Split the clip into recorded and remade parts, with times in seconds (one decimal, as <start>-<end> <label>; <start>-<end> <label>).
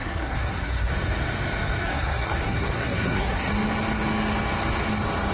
0.0-0.9 remade; 0.9-1.8 recorded; 1.8-3.5 remade; 3.5-5.3 recorded